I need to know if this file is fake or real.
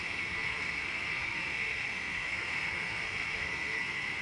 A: fake